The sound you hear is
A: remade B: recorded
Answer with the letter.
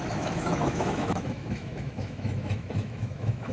A